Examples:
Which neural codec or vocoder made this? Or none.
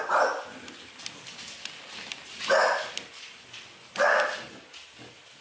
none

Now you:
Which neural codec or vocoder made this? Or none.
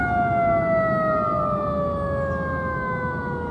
none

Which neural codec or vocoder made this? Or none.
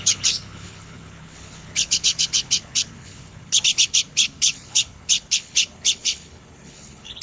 codec, HILCodec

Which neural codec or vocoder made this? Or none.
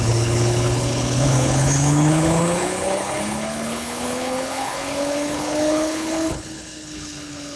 codec, HILCodec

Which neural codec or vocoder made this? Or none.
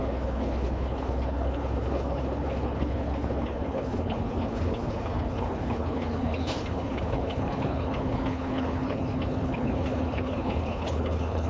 codec, HILCodec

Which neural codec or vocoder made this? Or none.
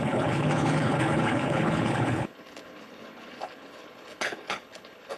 codec, HILCodec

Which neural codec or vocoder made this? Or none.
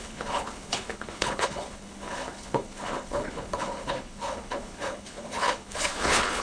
codec, HILCodec